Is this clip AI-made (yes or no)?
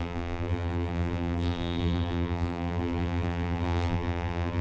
yes